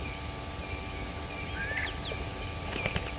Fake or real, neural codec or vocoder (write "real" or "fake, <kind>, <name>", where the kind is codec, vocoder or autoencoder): real